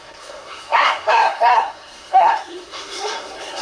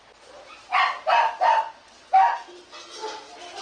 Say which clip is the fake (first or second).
first